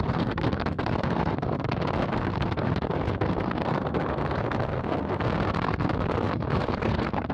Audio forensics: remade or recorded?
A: remade